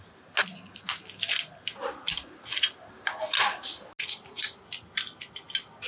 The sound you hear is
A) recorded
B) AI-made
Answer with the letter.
A